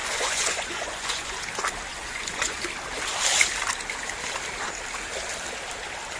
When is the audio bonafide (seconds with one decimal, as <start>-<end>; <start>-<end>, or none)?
1.4-1.9; 2.6-6.2